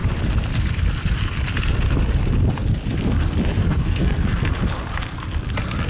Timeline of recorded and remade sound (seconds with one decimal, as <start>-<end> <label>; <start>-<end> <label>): 0.0-3.6 recorded; 3.6-4.4 remade; 4.4-5.9 recorded